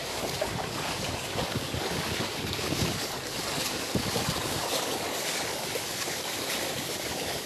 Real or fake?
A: fake